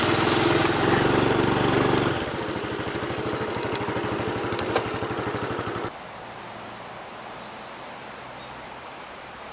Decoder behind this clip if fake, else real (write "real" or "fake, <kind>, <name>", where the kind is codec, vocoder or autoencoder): real